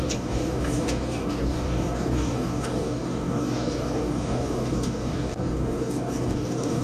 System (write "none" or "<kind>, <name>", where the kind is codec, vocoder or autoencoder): codec, DAC